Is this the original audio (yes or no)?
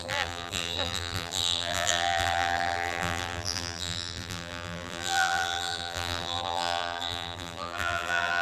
no